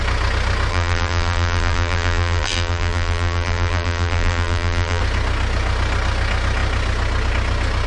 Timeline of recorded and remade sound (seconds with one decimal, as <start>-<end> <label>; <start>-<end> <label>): 0.0-0.7 recorded; 0.7-5.0 remade; 5.0-7.9 recorded